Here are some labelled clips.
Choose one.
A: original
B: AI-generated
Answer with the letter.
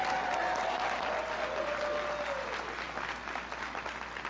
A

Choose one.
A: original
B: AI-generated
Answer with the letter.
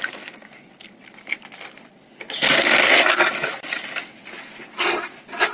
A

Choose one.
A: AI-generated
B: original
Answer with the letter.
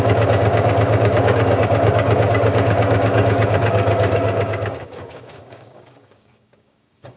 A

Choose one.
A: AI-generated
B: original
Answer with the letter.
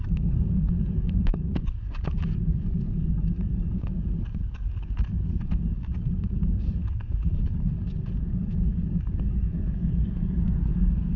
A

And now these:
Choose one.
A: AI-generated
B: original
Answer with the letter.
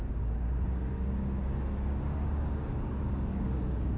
A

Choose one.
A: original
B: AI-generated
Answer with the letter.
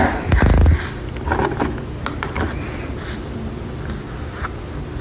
A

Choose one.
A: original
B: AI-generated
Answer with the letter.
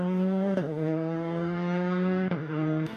B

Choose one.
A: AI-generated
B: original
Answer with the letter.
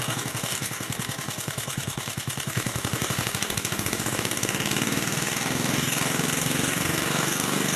A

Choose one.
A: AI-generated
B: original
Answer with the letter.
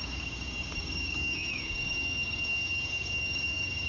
A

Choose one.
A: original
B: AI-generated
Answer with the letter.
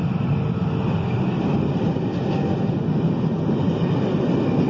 A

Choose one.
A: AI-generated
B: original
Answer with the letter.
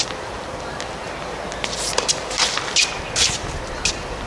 B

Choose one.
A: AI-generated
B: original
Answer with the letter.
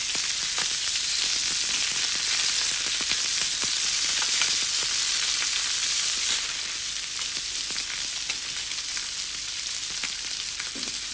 B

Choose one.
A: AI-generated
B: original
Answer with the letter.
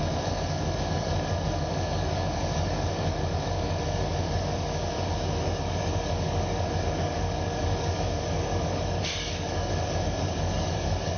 A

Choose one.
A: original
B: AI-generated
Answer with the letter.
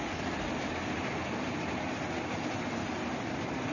A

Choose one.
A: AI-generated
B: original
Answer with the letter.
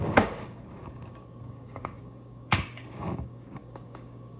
A